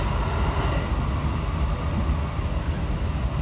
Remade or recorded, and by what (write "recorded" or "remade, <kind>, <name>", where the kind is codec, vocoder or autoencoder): recorded